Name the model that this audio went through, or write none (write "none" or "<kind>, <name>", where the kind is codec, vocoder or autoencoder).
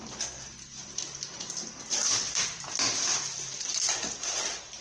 none